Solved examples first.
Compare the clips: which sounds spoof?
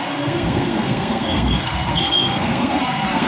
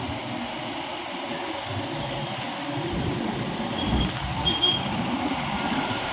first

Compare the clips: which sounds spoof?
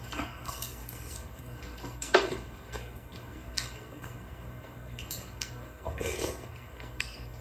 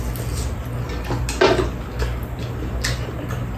first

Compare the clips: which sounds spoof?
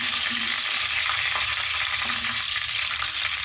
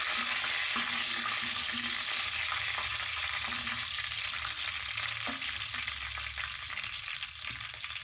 first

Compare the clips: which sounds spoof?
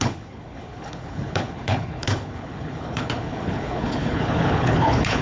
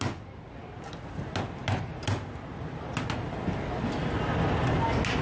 first